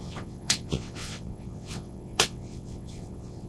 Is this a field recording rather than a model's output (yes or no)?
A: no